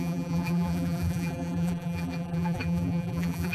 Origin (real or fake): fake